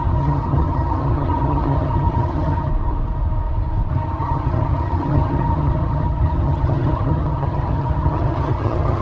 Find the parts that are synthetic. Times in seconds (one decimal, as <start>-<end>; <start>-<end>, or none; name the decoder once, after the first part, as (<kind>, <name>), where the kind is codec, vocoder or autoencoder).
0.0-2.7 (vocoder, HiFi-GAN); 3.9-9.0